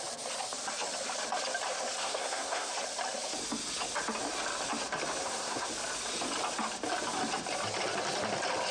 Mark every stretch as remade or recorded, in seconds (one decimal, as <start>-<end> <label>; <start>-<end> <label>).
0.0-2.0 recorded; 2.0-2.7 remade; 2.7-5.2 recorded; 5.2-5.7 remade; 5.7-8.7 recorded